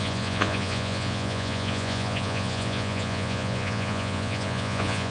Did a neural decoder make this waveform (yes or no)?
yes